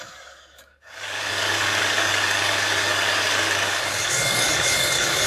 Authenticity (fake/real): fake